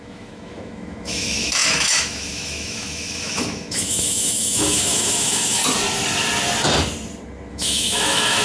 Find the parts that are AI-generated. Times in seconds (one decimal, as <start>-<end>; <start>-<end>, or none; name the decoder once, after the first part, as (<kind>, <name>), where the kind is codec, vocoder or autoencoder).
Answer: 0.0-5.6 (autoencoder, DAC-VAE); 7.5-8.4

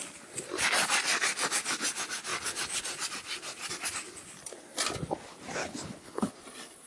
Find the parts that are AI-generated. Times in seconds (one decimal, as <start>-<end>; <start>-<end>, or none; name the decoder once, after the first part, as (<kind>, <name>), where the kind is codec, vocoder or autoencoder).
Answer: 5.6-6.3 (codec, HILCodec)

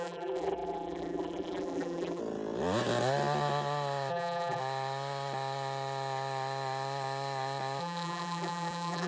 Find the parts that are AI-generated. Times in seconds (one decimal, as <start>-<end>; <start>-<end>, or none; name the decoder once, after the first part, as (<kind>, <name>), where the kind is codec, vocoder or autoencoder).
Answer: 0.0-2.2 (vocoder, BigVGAN v2); 4.1-4.6; 7.8-9.1

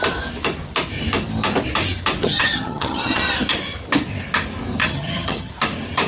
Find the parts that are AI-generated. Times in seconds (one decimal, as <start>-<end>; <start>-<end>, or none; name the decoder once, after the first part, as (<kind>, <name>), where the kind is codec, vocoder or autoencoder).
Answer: 2.2-3.2 (vocoder, HiFi-GAN); 4.8-5.5

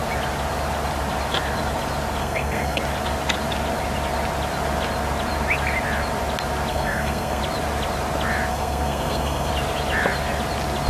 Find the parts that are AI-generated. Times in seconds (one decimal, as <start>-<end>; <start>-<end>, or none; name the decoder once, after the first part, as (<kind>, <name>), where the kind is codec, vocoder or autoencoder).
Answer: 2.2-2.8 (codec, SNAC); 6.7-7.4; 8.5-9.5

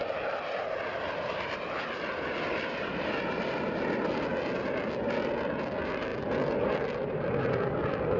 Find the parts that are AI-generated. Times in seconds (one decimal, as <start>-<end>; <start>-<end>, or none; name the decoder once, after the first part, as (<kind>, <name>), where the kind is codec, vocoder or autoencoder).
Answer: none

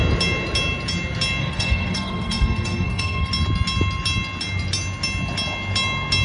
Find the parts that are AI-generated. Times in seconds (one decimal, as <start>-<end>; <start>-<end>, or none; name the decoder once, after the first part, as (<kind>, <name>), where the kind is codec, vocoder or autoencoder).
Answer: 1.4-3.3 (codec, SNAC)